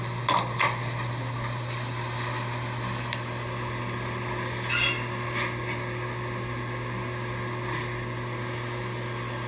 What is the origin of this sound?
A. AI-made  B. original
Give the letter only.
B